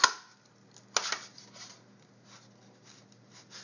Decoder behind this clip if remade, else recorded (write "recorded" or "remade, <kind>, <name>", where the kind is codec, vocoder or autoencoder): recorded